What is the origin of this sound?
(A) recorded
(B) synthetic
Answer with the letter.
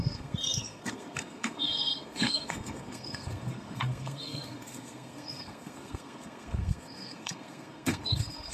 B